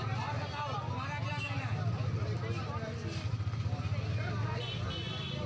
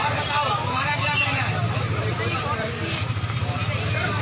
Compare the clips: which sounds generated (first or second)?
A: second